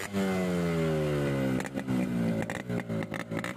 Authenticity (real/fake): real